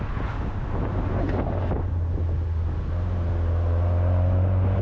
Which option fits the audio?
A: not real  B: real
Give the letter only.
B